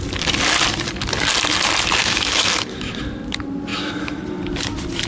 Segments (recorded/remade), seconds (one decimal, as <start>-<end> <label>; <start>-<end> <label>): 0.0-2.0 recorded; 2.0-3.0 remade; 3.0-3.7 recorded; 3.7-4.2 remade; 4.2-5.1 recorded

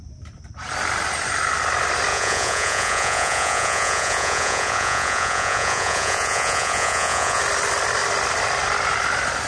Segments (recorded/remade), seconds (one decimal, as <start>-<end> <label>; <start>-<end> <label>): 0.0-2.1 recorded; 2.1-7.4 remade; 7.4-9.5 recorded